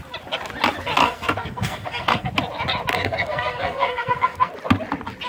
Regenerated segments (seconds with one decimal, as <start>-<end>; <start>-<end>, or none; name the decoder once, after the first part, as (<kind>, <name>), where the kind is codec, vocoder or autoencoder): 1.0-2.3 (codec, SNAC); 2.9-4.5